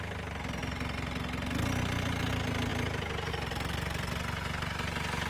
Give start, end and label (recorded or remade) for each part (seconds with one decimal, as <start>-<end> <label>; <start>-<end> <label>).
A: 0.0-5.3 recorded

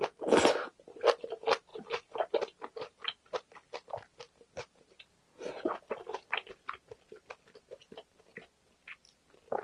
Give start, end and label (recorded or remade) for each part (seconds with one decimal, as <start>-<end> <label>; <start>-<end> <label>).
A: 0.0-9.6 recorded

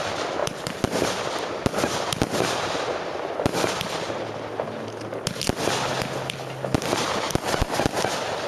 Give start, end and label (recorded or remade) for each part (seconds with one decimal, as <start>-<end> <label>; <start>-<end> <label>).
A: 0.0-8.5 recorded